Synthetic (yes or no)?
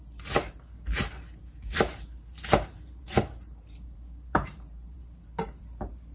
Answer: yes